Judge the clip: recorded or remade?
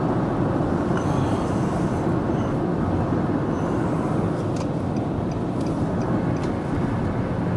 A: recorded